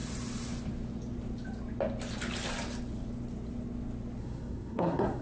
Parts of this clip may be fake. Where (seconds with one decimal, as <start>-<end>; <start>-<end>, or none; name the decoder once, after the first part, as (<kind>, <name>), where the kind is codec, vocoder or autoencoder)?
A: 4.2-5.2 (codec, SNAC)